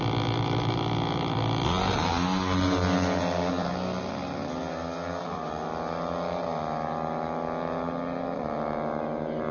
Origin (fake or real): real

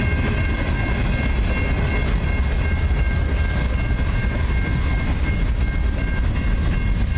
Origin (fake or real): real